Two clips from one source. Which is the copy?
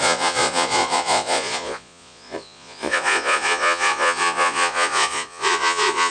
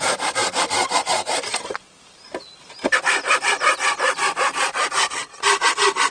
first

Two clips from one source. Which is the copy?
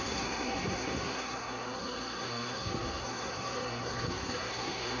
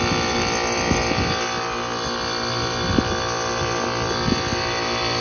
first